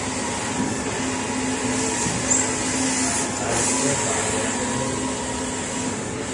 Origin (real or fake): real